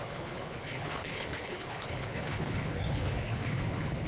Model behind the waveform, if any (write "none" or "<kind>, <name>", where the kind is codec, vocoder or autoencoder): codec, HILCodec